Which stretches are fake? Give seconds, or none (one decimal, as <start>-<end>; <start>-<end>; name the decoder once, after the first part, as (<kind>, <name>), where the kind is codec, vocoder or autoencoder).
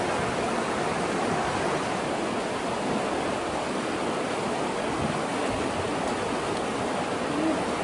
none